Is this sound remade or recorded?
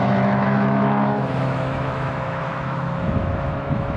remade